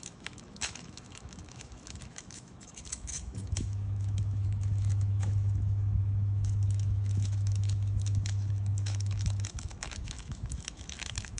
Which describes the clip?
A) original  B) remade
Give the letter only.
B